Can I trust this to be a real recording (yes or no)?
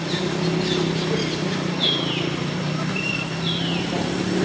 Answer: yes